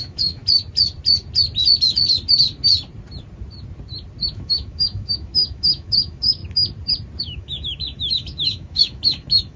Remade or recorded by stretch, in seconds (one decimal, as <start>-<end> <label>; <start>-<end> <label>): 0.0-0.4 remade; 0.4-4.3 recorded; 4.3-6.4 remade; 6.4-7.2 recorded; 7.2-9.6 remade